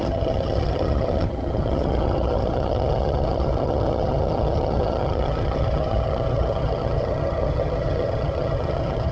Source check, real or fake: fake